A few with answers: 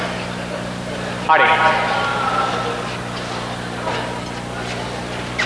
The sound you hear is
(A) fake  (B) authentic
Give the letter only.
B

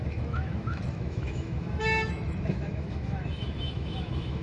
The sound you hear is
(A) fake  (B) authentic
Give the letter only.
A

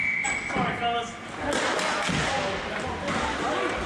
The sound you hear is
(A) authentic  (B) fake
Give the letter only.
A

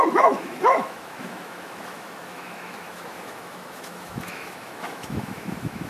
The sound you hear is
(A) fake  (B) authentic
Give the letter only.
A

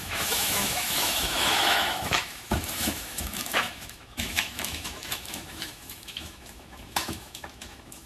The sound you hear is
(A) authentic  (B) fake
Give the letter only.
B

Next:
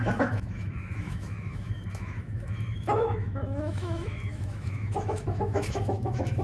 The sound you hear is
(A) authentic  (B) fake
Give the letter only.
B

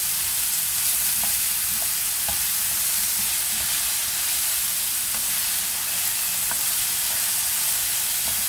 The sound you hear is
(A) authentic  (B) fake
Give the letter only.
A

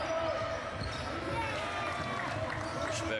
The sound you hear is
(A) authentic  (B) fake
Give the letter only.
A